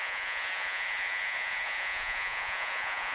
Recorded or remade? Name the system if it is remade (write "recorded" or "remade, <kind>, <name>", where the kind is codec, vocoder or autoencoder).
remade, vocoder, Vocos